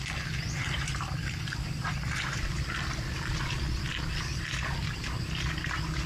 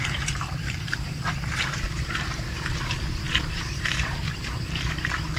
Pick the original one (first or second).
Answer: first